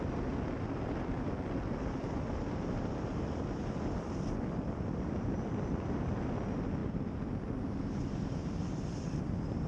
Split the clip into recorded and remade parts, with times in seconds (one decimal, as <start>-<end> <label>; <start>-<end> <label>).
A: 0.0-2.0 recorded; 2.0-4.3 remade; 4.3-9.7 recorded